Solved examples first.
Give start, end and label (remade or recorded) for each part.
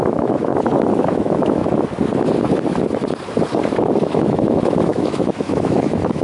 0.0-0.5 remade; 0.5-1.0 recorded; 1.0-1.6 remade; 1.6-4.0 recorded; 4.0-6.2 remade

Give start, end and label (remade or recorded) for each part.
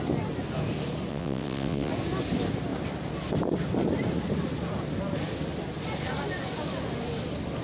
0.0-1.1 recorded; 1.1-1.9 remade; 1.9-7.6 recorded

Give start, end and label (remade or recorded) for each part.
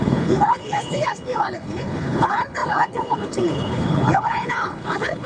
0.0-5.3 remade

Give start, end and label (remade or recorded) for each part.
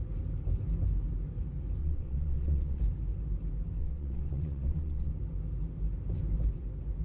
0.0-1.8 recorded; 1.8-2.8 remade; 2.8-3.8 recorded; 3.8-5.1 remade; 5.1-7.0 recorded